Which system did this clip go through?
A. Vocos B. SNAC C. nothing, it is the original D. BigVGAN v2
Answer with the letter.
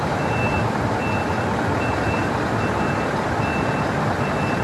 D